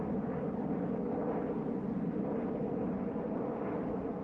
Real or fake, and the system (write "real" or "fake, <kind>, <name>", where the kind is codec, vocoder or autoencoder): real